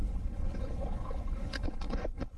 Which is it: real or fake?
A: fake